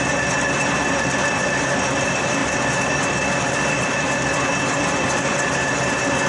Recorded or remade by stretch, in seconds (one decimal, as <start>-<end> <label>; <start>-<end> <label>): 0.0-6.3 recorded